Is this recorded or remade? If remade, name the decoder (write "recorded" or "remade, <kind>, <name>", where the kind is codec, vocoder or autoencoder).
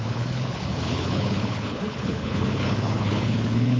remade, codec, HILCodec